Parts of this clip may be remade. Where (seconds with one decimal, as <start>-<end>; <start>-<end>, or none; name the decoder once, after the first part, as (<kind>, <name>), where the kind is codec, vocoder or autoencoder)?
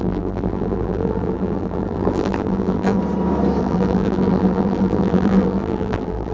0.0-3.0 (vocoder, BigVGAN v2); 3.6-6.3